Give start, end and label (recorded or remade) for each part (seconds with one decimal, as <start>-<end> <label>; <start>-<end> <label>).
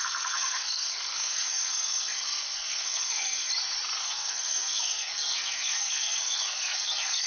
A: 0.0-3.5 remade; 3.5-4.0 recorded; 4.0-7.3 remade